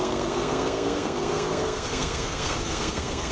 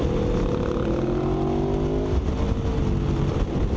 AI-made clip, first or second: first